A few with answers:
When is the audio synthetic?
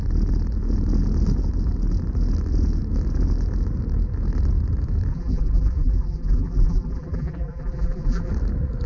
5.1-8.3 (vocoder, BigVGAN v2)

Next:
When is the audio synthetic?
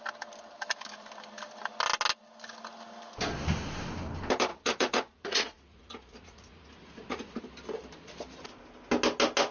4.5-7.4 (vocoder, Vocos)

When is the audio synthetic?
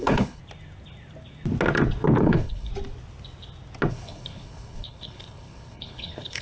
0.0-0.4 (codec, HILCodec); 2.2-2.7; 3.9-6.4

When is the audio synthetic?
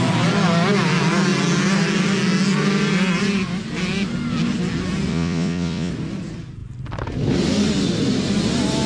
5.1-5.9 (vocoder, Vocos)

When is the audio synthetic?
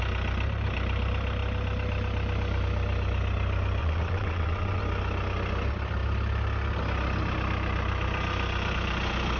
3.8-4.8 (vocoder, WaveNeXt)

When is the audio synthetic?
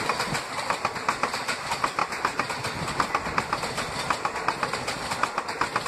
none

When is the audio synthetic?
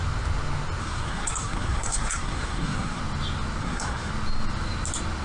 0.8-3.0 (codec, SNAC); 3.6-4.1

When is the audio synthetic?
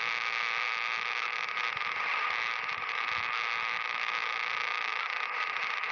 none